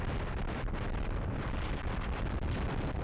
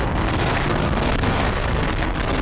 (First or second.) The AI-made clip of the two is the second